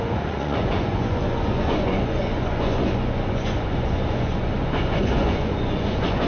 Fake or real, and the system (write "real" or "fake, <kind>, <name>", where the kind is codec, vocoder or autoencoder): fake, vocoder, Vocos